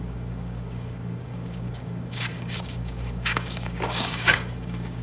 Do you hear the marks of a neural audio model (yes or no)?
yes